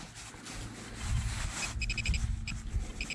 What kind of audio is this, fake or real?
real